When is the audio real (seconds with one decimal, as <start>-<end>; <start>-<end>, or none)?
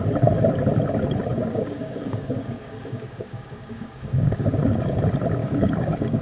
0.0-1.3; 5.0-5.4